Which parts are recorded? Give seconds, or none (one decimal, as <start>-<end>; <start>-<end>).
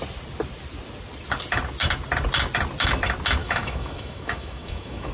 0.0-3.4